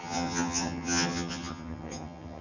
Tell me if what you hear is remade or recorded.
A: remade